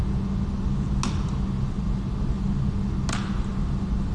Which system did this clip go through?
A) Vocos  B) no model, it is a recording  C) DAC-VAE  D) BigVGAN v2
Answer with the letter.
B